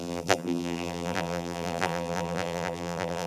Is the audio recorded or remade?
remade